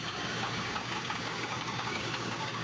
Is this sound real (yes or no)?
no